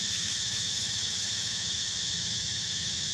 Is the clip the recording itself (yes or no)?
no